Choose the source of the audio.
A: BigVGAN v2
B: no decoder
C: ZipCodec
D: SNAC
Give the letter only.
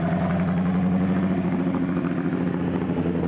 B